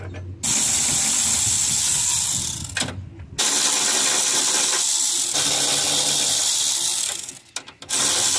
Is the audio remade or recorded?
recorded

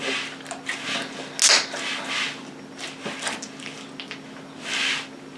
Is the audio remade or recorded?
recorded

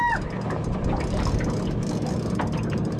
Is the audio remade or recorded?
recorded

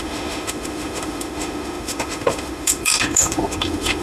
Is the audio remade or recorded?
remade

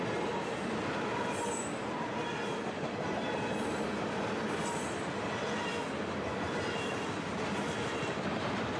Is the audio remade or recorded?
recorded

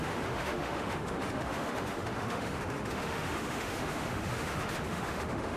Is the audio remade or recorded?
remade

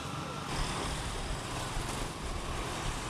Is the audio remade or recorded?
recorded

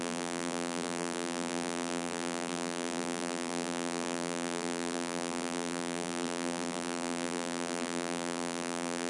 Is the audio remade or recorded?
remade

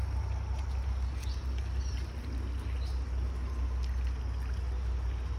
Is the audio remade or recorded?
recorded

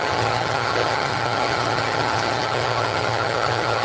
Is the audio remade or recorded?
remade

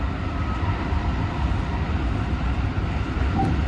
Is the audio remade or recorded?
recorded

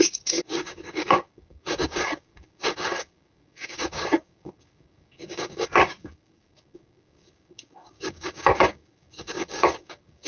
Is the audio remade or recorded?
remade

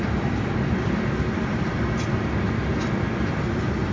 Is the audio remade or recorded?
recorded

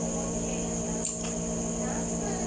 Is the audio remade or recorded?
recorded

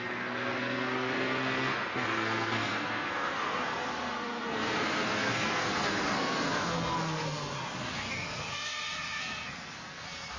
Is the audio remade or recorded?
remade